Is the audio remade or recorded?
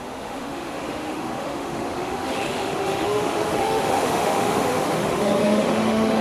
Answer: remade